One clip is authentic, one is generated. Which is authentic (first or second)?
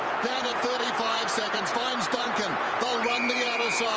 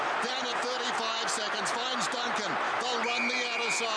second